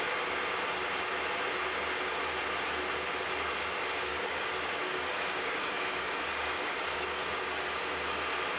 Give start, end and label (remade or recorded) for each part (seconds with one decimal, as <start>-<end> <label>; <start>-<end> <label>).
0.0-4.1 recorded; 4.1-7.4 remade; 7.4-8.6 recorded